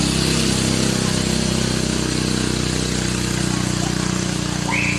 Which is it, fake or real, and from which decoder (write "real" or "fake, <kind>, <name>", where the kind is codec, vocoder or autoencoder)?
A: real